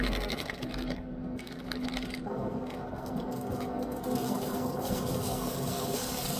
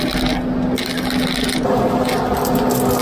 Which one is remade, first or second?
first